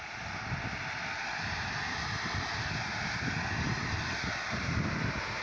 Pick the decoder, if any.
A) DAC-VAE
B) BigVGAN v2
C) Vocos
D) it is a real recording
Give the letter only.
D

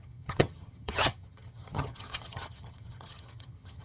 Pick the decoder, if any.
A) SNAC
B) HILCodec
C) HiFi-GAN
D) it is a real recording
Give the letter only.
C